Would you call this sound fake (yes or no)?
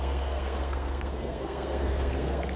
yes